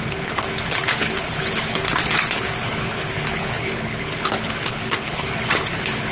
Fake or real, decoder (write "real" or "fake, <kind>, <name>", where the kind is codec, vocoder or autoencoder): fake, codec, HILCodec